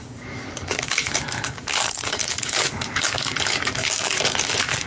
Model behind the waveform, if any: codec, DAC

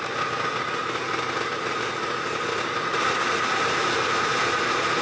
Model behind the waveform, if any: none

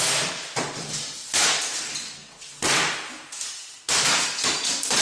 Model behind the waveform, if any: none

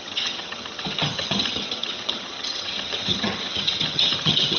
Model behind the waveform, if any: vocoder, HiFi-GAN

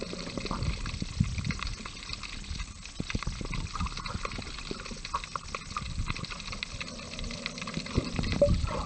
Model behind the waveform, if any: none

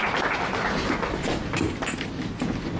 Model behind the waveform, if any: none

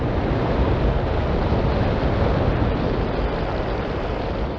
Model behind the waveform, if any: none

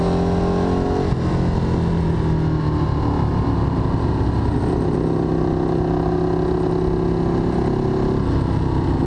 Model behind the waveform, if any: none